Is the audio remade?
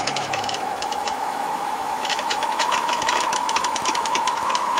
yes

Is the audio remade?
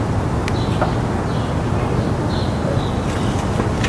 no